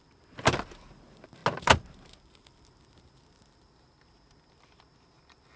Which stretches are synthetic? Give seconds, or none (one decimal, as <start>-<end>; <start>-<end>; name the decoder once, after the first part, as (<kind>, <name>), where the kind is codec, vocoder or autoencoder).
none